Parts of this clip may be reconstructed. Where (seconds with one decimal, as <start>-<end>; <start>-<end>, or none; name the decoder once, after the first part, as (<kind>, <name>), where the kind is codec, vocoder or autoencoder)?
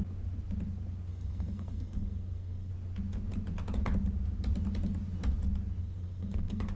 1.1-2.7 (codec, SNAC); 5.8-6.7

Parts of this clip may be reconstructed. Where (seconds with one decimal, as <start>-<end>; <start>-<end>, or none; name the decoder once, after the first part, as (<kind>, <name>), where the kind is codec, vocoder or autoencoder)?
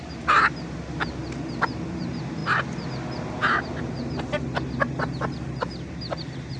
none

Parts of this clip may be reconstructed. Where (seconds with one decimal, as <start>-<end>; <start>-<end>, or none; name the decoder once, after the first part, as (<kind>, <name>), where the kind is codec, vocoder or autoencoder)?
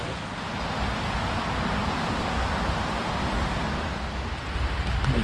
none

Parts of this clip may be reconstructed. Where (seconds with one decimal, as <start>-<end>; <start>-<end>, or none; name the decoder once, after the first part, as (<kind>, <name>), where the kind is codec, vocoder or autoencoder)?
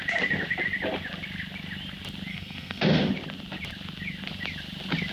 2.3-3.1 (codec, SNAC)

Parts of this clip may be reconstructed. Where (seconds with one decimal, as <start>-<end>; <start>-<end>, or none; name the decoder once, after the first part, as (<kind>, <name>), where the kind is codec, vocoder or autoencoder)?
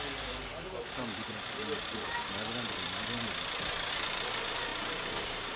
none